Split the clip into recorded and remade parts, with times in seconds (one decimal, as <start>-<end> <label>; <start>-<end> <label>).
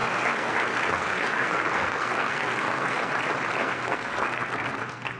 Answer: 0.0-3.1 remade; 3.1-3.6 recorded; 3.6-5.2 remade